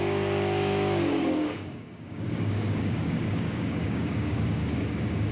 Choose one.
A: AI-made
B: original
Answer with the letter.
A